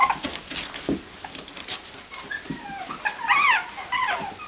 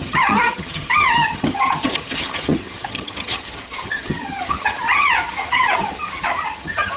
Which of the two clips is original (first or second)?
first